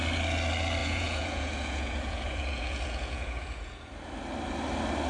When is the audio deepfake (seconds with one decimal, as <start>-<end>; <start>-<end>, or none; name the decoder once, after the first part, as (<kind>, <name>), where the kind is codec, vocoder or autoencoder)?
0.8-3.9 (vocoder, Vocos)